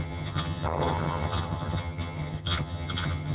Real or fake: fake